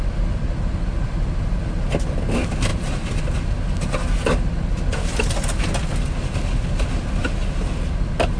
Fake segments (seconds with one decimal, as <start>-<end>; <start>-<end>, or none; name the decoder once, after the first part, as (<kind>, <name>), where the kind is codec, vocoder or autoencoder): 2.7-3.2 (vocoder, BigVGAN v2)